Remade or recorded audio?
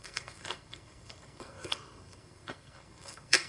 remade